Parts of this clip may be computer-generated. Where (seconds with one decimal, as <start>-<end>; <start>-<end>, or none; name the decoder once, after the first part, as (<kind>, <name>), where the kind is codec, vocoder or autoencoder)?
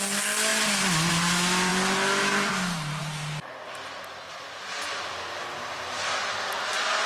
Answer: none